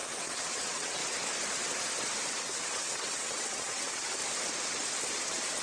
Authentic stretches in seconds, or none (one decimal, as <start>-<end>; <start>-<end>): 1.0-2.3; 4.2-5.6